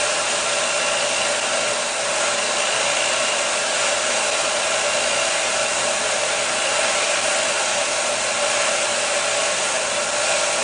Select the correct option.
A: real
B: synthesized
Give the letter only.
A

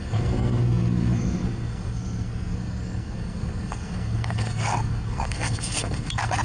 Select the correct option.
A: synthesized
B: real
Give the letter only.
A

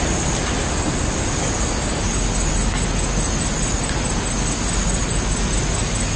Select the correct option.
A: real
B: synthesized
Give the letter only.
A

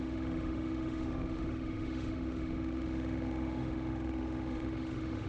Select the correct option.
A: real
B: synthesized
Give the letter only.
B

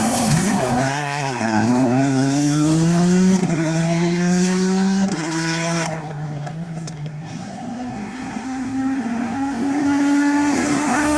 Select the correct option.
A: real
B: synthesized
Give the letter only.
B